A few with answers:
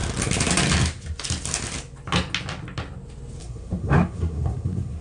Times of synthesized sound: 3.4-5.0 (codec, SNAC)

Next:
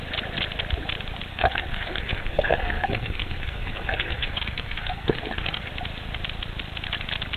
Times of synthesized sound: 1.3-5.7 (codec, SNAC)